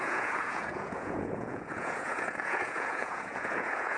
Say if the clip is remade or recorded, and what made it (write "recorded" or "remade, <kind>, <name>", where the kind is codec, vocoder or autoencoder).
remade, vocoder, Vocos